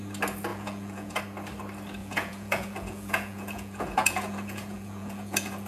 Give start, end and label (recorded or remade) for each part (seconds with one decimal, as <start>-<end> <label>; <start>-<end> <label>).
0.0-0.5 recorded; 0.5-1.2 remade; 1.2-2.0 recorded; 2.0-5.7 remade